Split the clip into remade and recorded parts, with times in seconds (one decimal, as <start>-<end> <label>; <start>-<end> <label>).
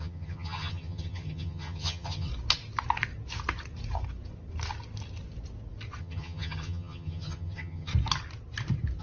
0.0-2.3 remade; 2.3-6.0 recorded; 6.0-7.9 remade; 7.9-9.0 recorded